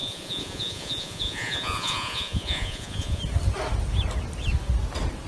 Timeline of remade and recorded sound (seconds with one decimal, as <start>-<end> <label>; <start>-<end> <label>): 0.0-3.2 remade; 3.2-5.3 recorded